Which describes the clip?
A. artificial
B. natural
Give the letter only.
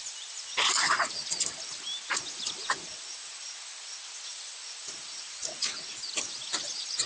B